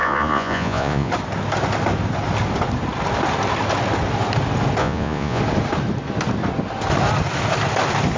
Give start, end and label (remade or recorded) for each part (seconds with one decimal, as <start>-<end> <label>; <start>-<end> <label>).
0.0-1.1 remade; 1.1-4.8 recorded; 4.8-5.4 remade; 5.4-8.2 recorded